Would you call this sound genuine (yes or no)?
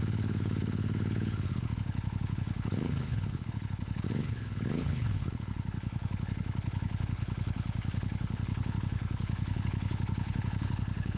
no